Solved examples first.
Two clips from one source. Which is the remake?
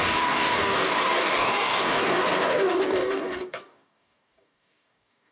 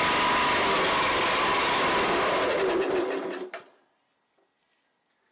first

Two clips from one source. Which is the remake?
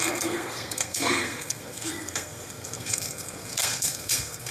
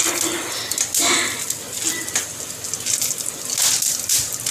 first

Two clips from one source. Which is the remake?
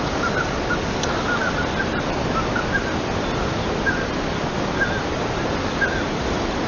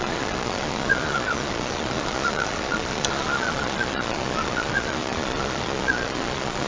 second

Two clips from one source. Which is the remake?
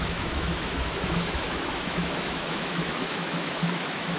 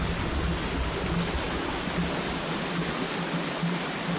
first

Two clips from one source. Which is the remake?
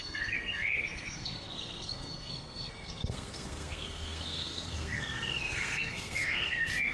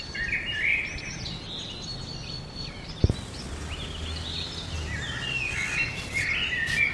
first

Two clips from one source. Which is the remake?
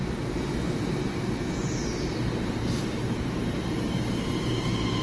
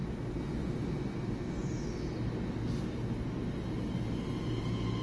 first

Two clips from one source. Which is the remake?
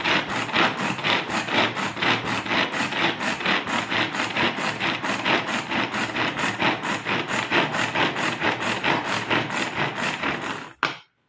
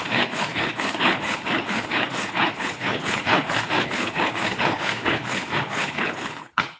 second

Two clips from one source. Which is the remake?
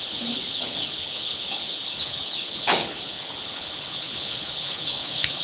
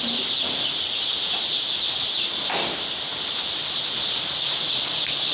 first